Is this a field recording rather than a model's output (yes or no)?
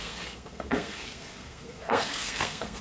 no